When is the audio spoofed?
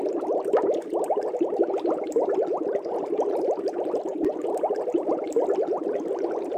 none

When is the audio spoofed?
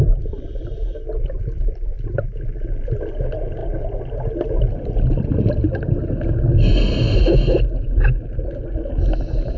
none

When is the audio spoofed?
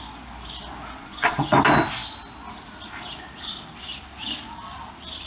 1.0-1.6 (vocoder, Vocos)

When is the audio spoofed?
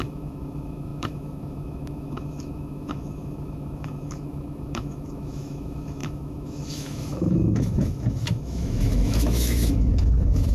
0.0-10.5 (autoencoder, DAC-VAE)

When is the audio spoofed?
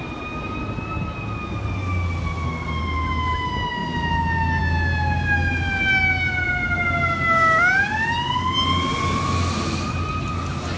none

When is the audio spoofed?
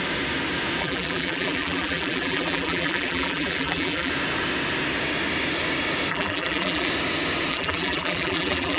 0.8-4.1 (vocoder, BigVGAN v2); 6.1-6.9; 7.5-8.8